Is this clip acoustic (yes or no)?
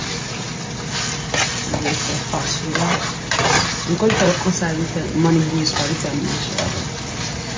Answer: yes